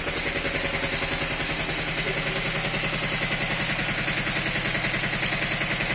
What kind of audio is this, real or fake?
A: real